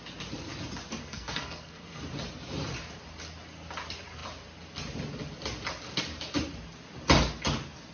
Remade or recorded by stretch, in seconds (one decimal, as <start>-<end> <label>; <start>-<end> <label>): 0.0-1.0 recorded; 1.0-2.0 remade; 2.0-7.9 recorded